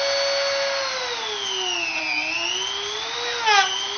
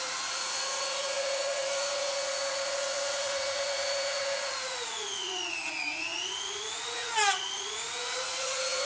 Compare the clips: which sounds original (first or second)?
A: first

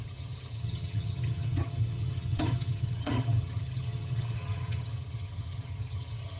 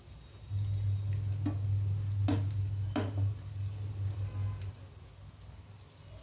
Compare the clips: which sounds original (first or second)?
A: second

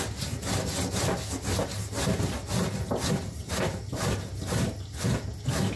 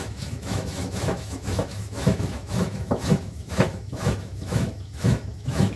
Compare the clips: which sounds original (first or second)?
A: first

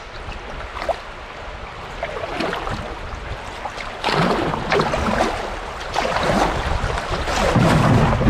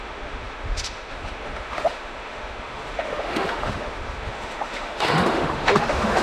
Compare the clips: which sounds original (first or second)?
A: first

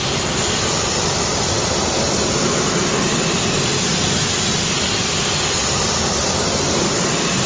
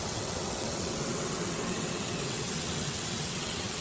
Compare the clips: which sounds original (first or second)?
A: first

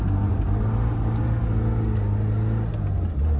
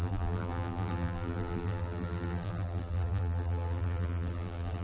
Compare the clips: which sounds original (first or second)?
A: first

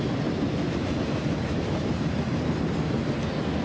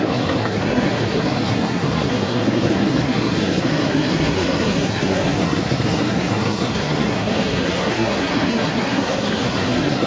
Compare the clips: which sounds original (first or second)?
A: first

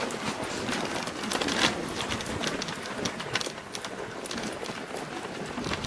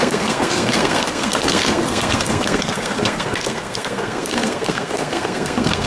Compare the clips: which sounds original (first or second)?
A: first